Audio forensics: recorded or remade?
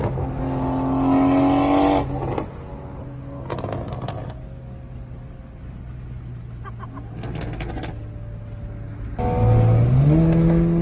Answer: recorded